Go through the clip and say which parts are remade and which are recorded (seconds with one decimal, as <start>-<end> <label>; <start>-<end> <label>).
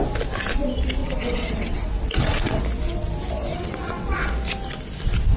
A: 0.0-1.0 recorded; 1.0-2.6 remade; 2.6-3.5 recorded; 3.5-4.3 remade; 4.3-5.4 recorded